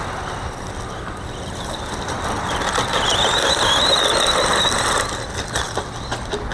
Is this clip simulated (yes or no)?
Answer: no